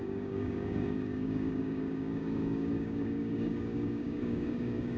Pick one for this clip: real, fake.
fake